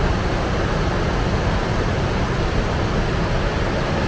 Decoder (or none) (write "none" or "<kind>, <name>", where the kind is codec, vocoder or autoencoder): none